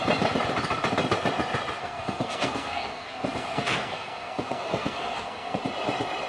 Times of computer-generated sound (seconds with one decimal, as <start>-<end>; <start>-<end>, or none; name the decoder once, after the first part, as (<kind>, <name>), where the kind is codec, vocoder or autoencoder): 1.8-5.6 (codec, SNAC)